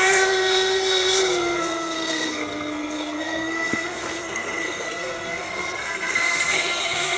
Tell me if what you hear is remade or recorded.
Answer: remade